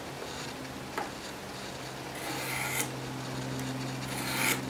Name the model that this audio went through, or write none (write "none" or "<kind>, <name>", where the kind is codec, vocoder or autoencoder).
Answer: none